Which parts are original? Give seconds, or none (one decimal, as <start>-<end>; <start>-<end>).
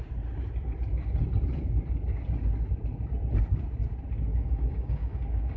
0.0-4.3